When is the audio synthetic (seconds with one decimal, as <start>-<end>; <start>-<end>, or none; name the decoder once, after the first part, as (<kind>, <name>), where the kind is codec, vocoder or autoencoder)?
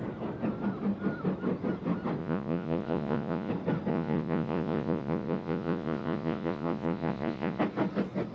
2.2-3.5 (vocoder, Vocos); 3.9-7.6